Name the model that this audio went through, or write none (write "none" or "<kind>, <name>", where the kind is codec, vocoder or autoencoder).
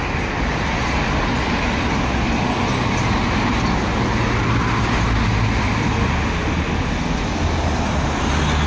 none